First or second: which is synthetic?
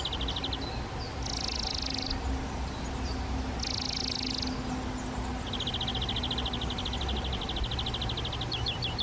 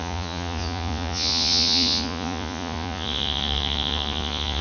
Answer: second